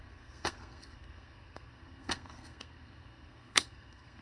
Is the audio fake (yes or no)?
yes